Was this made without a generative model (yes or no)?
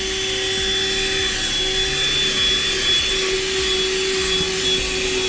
yes